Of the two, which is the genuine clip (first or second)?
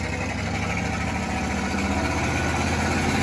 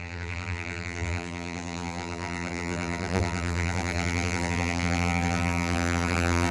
first